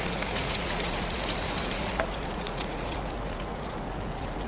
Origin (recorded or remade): remade